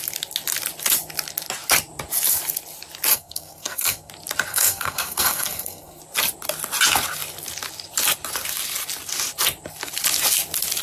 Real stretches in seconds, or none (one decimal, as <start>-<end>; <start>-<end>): 0.0-3.1; 4.1-4.5; 6.0-10.8